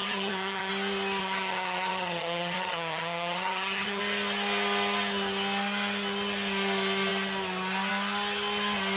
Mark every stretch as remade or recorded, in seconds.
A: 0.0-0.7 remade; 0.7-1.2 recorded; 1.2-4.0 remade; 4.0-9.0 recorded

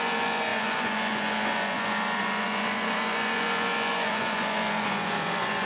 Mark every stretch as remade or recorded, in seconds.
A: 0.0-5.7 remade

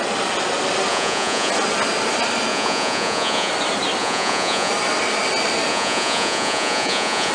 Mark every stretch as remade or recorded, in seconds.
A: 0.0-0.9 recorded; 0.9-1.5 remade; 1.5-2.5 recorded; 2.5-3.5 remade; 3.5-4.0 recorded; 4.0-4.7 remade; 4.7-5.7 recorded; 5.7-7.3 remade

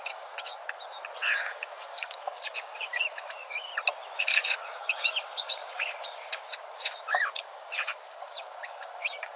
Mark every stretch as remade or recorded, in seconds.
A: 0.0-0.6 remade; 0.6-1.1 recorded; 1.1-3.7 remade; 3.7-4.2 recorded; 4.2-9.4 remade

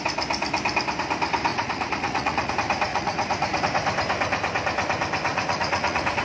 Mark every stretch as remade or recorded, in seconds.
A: 0.0-1.5 recorded; 1.5-2.5 remade; 2.5-2.9 recorded; 2.9-3.6 remade; 3.6-5.3 recorded; 5.3-6.2 remade

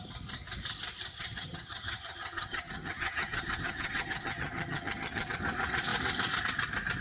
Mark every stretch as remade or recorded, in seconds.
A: 0.0-1.1 recorded; 1.1-5.3 remade; 5.3-7.0 recorded

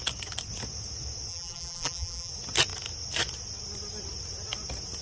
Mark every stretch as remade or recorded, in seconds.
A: 0.0-1.3 recorded; 1.3-2.3 remade; 2.3-5.0 recorded